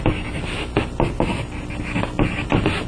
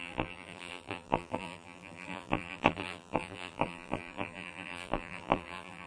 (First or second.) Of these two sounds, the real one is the first